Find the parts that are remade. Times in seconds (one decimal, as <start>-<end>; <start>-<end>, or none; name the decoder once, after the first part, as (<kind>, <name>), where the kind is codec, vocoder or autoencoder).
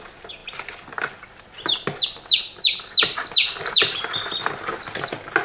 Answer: none